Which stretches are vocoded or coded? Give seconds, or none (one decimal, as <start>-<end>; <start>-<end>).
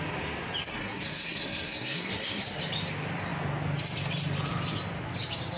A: 0.7-2.6